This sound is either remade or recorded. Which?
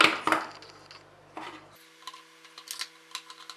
recorded